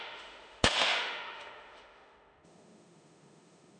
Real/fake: fake